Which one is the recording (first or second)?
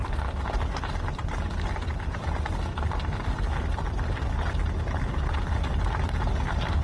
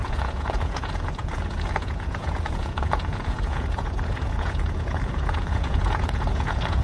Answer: first